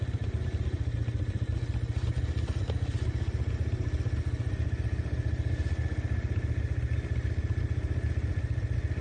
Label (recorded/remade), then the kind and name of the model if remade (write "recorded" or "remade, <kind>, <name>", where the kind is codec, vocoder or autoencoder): recorded